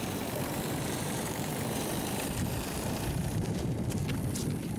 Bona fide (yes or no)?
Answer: no